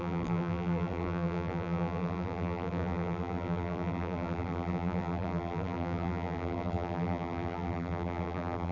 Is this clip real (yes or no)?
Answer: no